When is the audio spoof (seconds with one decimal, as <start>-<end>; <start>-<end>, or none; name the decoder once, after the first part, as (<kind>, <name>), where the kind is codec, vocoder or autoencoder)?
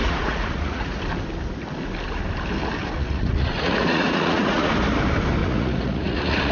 0.0-1.0 (vocoder, Vocos); 2.8-4.7; 5.4-6.5